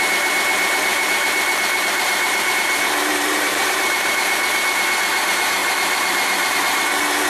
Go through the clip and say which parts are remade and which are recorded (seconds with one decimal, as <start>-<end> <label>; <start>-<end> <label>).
0.0-0.9 recorded; 0.9-2.5 remade; 2.5-3.1 recorded; 3.1-4.8 remade; 4.8-5.6 recorded; 5.6-6.6 remade; 6.6-7.3 recorded